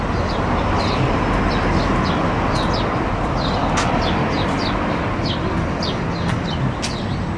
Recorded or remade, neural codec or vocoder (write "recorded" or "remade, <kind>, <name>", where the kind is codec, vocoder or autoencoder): recorded